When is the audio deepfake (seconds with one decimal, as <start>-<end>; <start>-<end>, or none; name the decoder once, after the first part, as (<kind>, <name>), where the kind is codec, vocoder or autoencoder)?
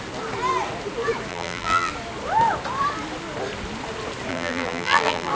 1.3-1.9 (vocoder, BigVGAN v2); 4.3-5.3